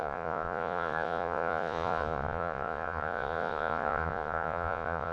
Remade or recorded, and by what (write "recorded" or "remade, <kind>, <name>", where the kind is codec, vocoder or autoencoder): remade, vocoder, Vocos